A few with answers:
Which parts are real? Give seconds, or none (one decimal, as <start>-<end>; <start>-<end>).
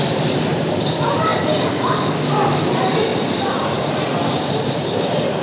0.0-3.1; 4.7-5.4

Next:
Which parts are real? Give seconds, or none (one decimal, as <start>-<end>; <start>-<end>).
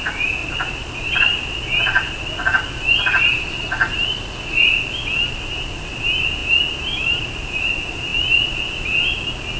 0.0-0.4; 1.6-6.4; 7.6-9.6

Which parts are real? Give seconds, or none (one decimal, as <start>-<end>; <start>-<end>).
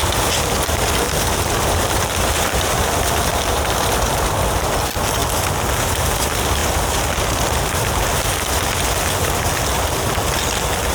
4.3-10.9